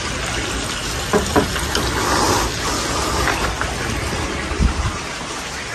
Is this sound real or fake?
real